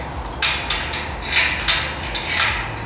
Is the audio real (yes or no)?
yes